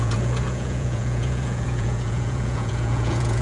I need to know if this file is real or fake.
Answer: fake